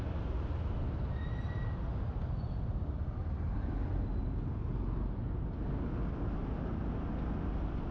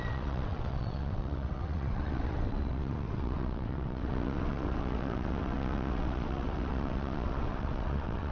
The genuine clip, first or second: first